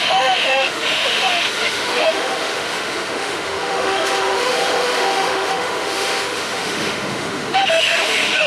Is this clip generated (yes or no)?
yes